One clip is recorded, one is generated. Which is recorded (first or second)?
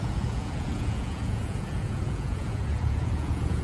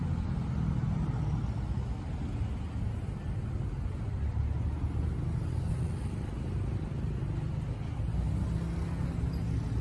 second